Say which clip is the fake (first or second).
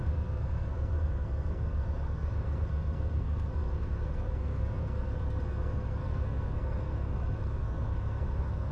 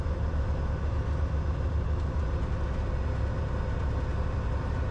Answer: first